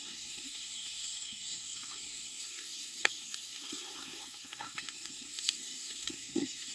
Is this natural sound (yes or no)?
no